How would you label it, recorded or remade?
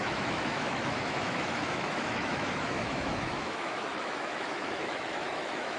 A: remade